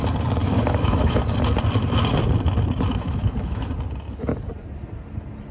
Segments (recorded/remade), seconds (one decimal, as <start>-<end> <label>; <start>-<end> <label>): 0.0-0.4 recorded; 0.4-1.2 remade; 1.2-2.9 recorded; 2.9-3.7 remade; 3.7-5.5 recorded